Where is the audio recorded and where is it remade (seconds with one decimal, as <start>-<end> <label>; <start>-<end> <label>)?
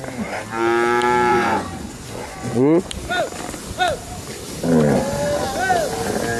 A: 0.0-1.3 recorded; 1.3-2.9 remade; 2.9-6.4 recorded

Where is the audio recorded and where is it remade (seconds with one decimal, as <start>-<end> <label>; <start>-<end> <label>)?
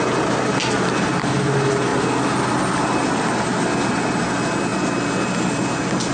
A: 0.0-6.1 recorded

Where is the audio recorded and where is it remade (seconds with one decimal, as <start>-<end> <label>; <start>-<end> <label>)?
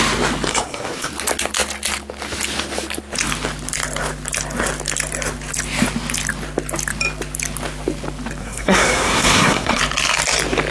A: 0.0-0.5 recorded; 0.5-1.1 remade; 1.1-8.4 recorded; 8.4-9.8 remade; 9.8-10.7 recorded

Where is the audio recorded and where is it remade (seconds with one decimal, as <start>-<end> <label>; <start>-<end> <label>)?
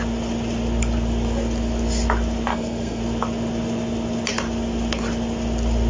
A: 0.0-2.5 recorded; 2.5-3.0 remade; 3.0-5.9 recorded